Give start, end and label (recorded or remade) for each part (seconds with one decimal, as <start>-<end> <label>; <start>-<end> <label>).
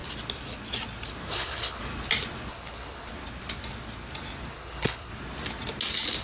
0.0-1.3 recorded; 1.3-1.8 remade; 1.8-2.5 recorded; 2.5-3.1 remade; 3.1-4.5 recorded; 4.5-5.1 remade; 5.1-6.2 recorded